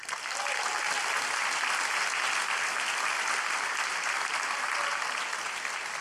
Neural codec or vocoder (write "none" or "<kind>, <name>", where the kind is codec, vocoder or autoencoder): none